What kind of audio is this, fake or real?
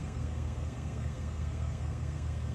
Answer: fake